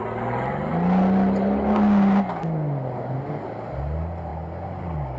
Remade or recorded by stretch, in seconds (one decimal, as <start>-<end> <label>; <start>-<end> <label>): 0.0-5.2 recorded